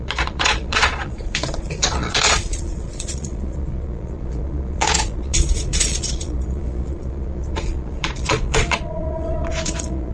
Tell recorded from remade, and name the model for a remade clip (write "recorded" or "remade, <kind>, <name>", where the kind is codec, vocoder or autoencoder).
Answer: remade, vocoder, Vocos